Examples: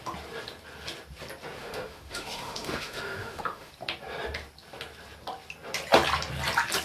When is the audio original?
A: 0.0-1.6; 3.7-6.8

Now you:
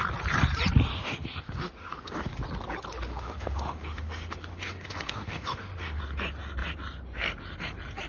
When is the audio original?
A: 0.0-0.9; 2.3-3.1; 6.0-8.1

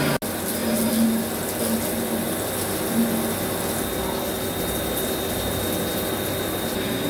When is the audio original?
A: 0.0-7.1